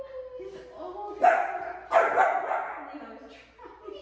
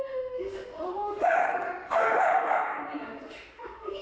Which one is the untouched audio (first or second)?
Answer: first